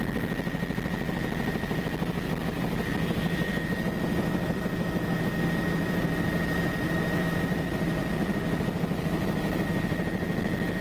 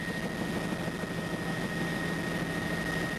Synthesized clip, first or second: first